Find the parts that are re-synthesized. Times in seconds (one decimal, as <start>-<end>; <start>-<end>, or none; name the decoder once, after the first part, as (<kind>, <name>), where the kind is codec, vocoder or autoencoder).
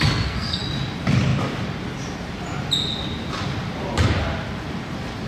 0.0-0.6 (codec, SNAC)